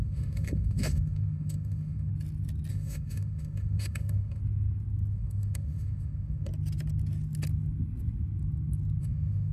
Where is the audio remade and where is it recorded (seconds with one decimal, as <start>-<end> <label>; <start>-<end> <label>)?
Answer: 0.0-2.1 remade; 2.1-2.7 recorded; 2.7-4.4 remade; 4.4-5.1 recorded; 5.1-6.5 remade; 6.5-9.0 recorded; 9.0-9.5 remade